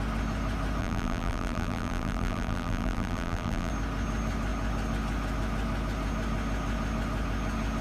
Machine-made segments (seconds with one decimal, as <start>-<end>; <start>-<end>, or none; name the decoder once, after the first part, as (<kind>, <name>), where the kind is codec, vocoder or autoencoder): 0.8-3.7 (vocoder, BigVGAN v2)